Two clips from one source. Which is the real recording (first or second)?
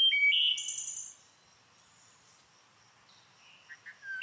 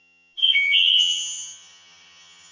first